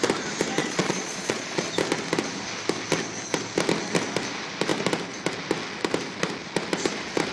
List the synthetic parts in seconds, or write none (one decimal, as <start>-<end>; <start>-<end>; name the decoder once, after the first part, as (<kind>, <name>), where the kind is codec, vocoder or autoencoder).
0.6-1.7 (vocoder, Vocos)